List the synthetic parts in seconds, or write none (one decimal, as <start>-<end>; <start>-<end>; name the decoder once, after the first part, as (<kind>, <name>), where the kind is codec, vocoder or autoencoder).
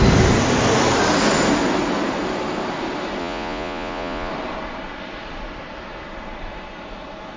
3.2-4.3 (vocoder, Vocos)